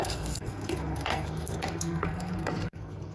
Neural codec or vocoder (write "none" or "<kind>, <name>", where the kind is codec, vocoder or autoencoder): codec, SNAC